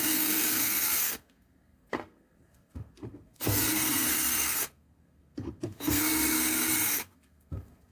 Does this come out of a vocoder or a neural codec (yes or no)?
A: yes